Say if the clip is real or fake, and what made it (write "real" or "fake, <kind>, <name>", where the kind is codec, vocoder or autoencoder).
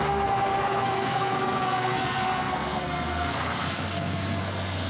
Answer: fake, codec, SNAC